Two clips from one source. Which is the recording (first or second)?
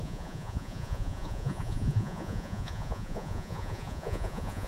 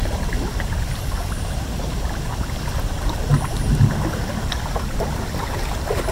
second